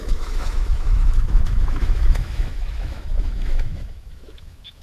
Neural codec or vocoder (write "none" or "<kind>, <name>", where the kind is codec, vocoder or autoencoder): autoencoder, DAC-VAE